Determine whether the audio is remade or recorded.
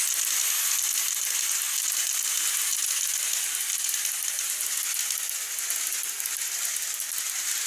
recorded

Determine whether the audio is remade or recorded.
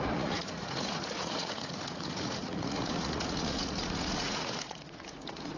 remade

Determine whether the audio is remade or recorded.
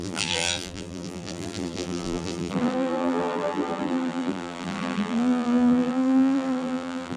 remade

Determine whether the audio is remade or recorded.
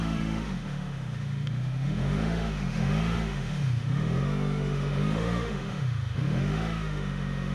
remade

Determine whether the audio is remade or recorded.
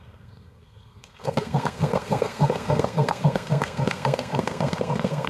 remade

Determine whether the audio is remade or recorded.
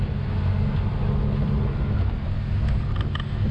recorded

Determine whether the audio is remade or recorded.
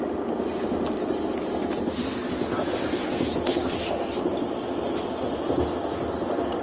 recorded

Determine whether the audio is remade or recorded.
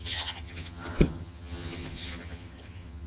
remade